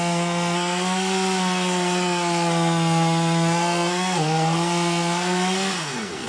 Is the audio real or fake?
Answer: fake